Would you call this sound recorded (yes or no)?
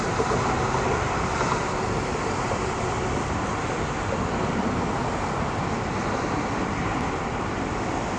no